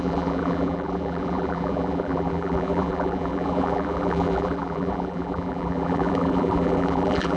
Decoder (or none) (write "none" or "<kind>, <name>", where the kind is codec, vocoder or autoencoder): vocoder, BigVGAN v2